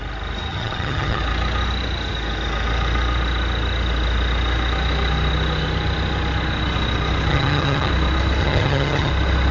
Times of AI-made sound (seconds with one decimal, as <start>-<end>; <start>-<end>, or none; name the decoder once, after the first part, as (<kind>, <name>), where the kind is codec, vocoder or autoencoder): 0.5-1.2 (vocoder, HiFi-GAN); 7.3-7.9; 8.4-9.1